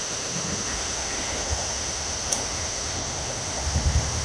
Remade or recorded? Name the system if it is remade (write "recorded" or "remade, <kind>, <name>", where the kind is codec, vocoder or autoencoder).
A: remade, autoencoder, DAC-VAE